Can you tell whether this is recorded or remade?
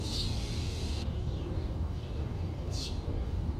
remade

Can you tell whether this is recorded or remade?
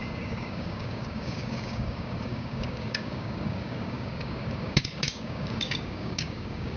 remade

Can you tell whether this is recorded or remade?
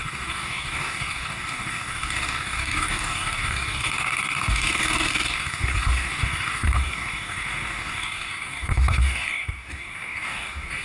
remade